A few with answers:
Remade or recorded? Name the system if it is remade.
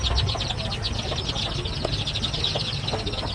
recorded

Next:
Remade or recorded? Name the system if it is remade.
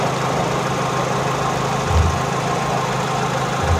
recorded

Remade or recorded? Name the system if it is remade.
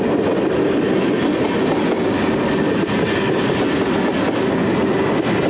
recorded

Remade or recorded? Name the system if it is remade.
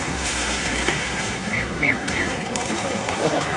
remade, codec, SNAC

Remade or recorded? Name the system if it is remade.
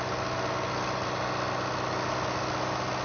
recorded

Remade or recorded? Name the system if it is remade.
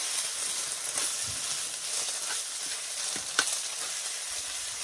recorded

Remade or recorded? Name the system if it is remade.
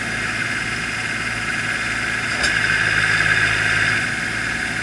recorded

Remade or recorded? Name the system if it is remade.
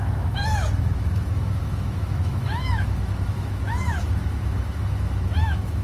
remade, autoencoder, DAC-VAE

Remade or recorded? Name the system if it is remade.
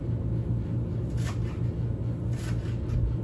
recorded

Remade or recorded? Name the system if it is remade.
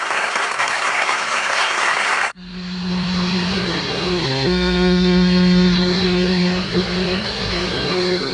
remade, codec, SNAC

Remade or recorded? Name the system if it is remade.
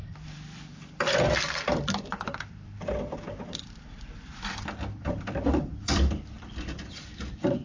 remade, vocoder, BigVGAN v2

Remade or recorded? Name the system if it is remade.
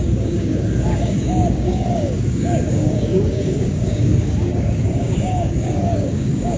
remade, codec, DAC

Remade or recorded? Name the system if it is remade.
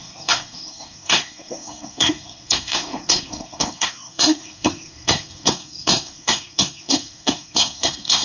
remade, codec, SNAC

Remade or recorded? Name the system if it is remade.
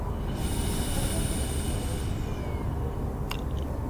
recorded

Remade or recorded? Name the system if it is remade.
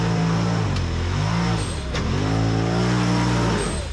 recorded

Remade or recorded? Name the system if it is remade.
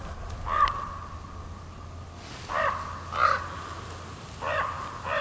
recorded